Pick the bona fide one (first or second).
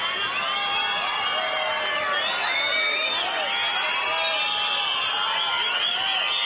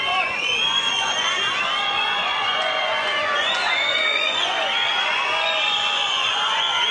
first